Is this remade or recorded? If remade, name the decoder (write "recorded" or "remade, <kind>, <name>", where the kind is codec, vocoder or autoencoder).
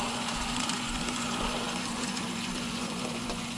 remade, vocoder, Vocos